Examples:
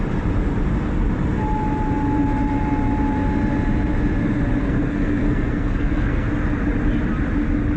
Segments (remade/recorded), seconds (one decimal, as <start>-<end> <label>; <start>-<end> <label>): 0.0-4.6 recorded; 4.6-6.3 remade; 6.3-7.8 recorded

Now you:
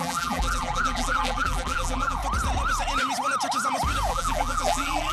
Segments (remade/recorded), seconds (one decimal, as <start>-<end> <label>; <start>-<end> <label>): 0.0-2.2 remade; 2.2-4.1 recorded; 4.1-5.1 remade

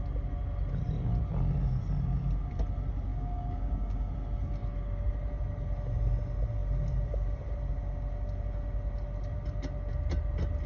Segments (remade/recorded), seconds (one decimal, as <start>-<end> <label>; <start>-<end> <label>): 0.0-3.1 recorded; 3.1-4.1 remade; 4.1-10.7 recorded

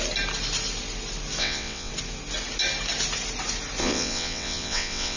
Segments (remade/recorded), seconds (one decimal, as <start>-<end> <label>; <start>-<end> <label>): 0.0-1.4 recorded; 1.4-1.9 remade; 1.9-3.8 recorded; 3.8-5.2 remade

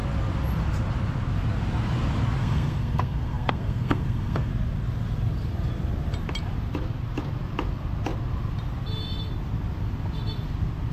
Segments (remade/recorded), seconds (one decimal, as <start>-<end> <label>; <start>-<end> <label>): 0.0-2.4 recorded; 2.4-4.5 remade; 4.5-10.9 recorded